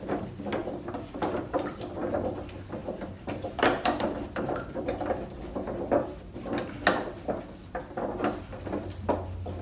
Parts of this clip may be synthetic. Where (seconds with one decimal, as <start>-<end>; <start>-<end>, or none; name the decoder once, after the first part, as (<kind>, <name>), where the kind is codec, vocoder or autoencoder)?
0.6-2.0 (vocoder, BigVGAN v2); 2.8-5.4